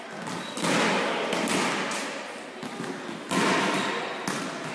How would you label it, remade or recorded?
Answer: recorded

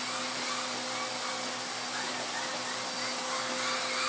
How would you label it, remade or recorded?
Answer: recorded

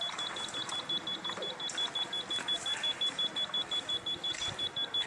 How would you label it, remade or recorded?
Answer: recorded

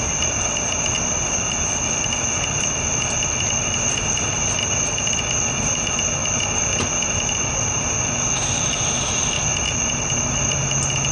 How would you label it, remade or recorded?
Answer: recorded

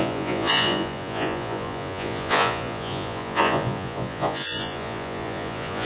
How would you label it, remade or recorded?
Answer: remade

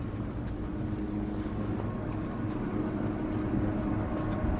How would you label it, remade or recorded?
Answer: recorded